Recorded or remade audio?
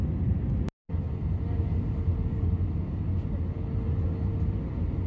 recorded